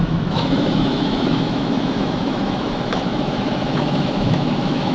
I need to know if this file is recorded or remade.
remade